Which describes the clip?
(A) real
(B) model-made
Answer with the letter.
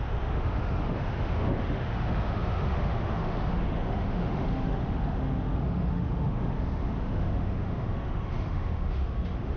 B